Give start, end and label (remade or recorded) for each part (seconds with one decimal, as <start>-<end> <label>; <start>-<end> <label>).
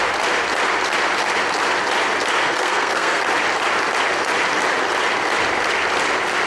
0.0-2.4 recorded; 2.4-3.2 remade; 3.2-6.5 recorded